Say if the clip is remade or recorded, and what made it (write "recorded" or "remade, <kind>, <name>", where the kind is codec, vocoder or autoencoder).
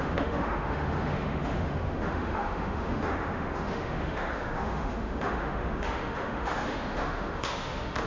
remade, autoencoder, DAC-VAE